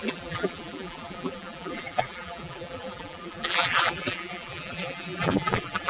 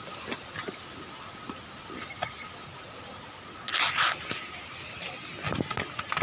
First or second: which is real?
second